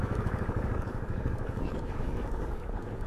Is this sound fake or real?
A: fake